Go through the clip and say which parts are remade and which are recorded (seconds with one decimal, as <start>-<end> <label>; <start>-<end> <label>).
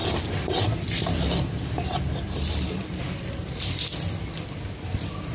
0.0-5.3 remade